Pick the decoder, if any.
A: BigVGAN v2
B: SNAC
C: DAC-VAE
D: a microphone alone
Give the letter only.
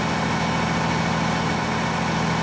D